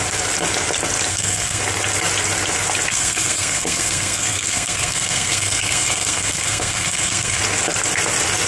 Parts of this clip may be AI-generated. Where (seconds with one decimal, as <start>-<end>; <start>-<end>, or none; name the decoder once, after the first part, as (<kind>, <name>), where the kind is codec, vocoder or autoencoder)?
1.1-1.6 (codec, SNAC); 2.9-7.4